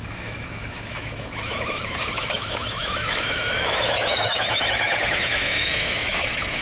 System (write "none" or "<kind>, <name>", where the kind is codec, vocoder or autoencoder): autoencoder, DAC-VAE